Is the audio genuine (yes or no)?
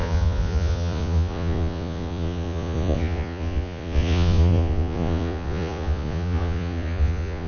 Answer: no